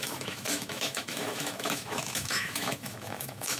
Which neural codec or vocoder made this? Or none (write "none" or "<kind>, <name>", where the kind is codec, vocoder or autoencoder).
autoencoder, DAC-VAE